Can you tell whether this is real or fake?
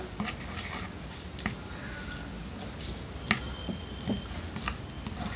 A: real